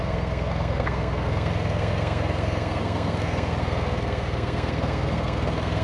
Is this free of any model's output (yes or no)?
no